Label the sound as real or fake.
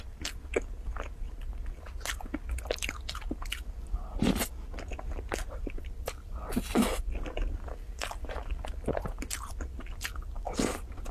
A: real